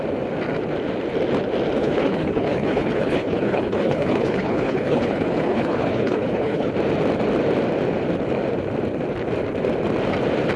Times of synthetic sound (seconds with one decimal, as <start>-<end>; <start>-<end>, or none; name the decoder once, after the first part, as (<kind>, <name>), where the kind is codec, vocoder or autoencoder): 1.8-6.7 (codec, HILCodec)